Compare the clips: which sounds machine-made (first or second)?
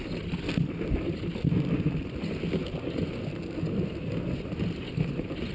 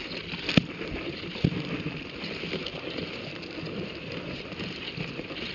second